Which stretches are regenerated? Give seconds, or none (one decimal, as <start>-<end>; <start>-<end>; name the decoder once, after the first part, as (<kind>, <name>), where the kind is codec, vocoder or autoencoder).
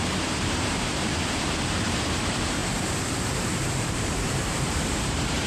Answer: 0.0-5.5 (vocoder, BigVGAN v2)